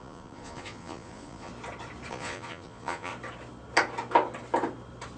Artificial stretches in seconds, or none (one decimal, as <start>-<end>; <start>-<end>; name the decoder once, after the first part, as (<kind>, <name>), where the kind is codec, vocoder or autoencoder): 0.0-1.5 (vocoder, Vocos); 2.1-3.1